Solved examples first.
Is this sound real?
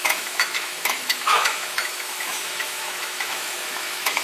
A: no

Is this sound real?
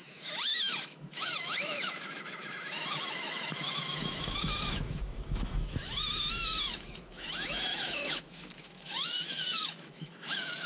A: no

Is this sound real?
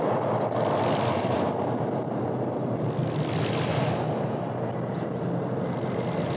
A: yes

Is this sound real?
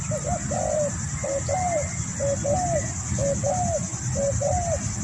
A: yes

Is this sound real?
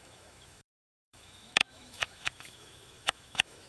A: no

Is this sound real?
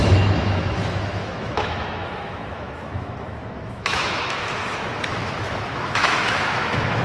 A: no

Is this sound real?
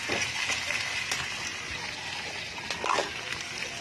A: yes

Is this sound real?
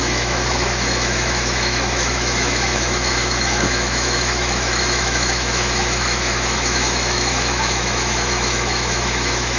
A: no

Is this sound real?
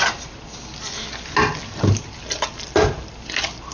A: yes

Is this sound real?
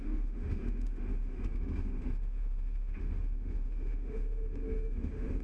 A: no